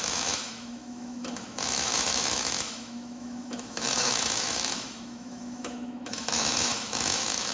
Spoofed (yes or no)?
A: yes